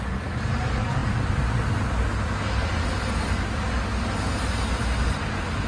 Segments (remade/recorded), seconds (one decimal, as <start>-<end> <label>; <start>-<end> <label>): 0.0-5.7 recorded